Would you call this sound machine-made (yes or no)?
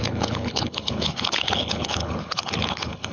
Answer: yes